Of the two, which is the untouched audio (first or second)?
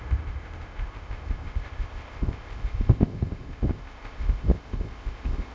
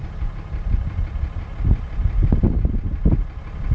second